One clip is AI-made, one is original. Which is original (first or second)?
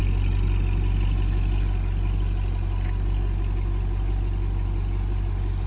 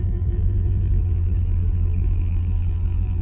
first